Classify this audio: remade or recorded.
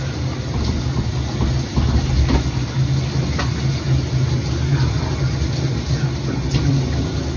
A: recorded